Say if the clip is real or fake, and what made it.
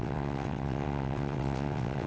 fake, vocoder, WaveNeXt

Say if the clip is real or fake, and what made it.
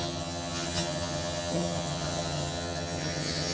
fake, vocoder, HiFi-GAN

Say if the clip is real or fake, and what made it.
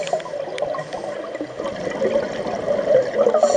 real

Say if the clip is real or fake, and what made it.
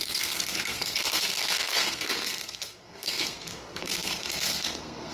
fake, codec, SNAC